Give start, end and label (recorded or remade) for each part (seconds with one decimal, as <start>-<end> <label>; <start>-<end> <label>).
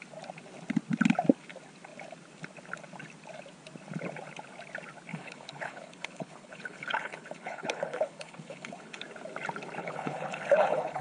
0.0-5.1 recorded; 5.1-9.0 remade; 9.0-9.8 recorded; 9.8-11.0 remade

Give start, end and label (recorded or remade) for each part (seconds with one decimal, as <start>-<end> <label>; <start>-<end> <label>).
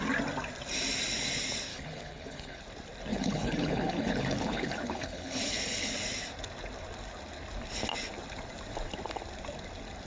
0.0-1.7 recorded; 1.7-2.6 remade; 2.6-3.1 recorded; 3.1-5.9 remade; 5.9-10.1 recorded